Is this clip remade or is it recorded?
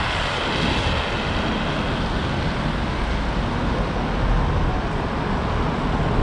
recorded